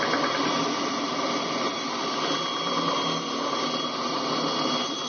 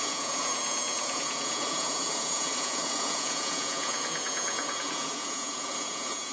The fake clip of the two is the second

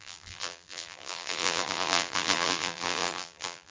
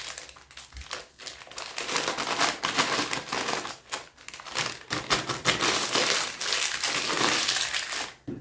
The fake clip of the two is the first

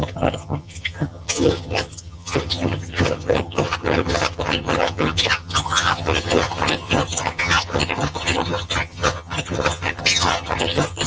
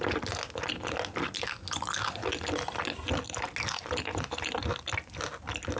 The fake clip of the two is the first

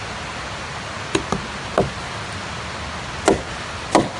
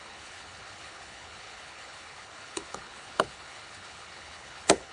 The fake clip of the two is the second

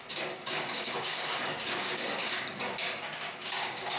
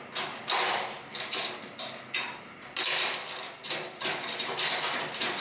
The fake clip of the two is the first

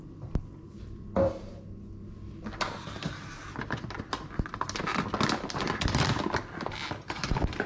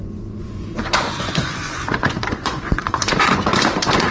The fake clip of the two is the second